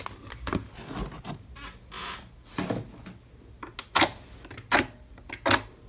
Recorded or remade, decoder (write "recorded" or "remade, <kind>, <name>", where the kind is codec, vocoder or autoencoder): recorded